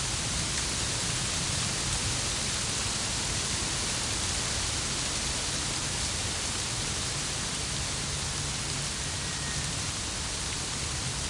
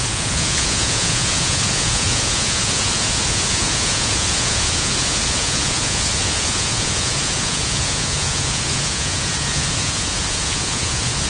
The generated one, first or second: second